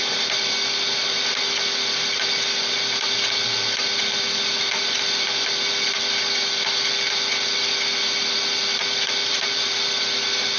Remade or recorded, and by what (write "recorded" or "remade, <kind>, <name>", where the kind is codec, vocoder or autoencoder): recorded